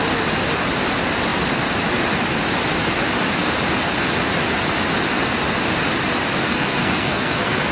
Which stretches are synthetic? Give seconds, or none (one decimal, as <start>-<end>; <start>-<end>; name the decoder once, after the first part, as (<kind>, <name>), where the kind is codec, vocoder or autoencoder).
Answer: 6.4-7.7 (codec, SNAC)